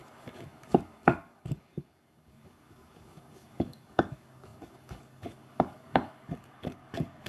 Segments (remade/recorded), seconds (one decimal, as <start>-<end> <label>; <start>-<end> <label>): 0.0-7.3 remade